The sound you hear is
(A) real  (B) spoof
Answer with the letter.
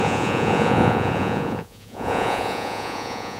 B